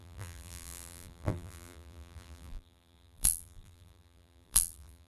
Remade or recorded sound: remade